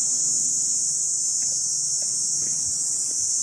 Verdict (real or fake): real